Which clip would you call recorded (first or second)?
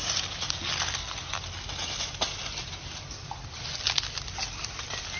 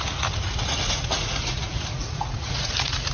first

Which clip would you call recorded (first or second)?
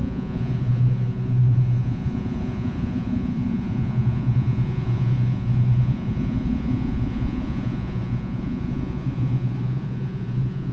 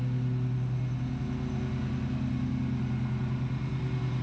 second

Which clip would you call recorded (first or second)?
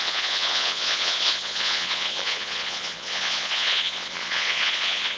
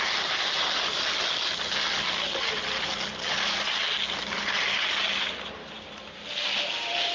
second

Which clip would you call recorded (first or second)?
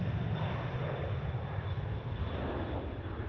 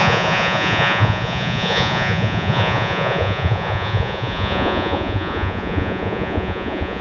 first